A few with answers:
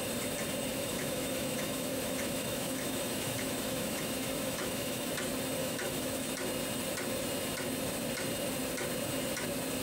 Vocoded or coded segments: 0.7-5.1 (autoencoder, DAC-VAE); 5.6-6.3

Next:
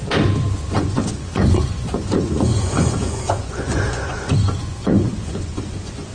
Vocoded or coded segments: 0.6-6.1 (vocoder, Vocos)